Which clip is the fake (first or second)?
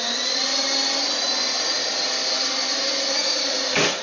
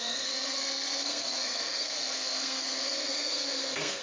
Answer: second